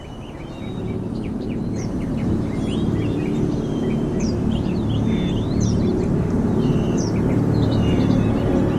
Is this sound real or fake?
fake